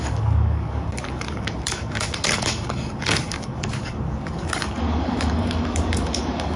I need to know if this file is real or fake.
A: fake